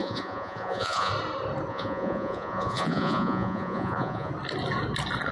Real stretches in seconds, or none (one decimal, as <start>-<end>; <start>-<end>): 1.1-1.7; 4.3-5.3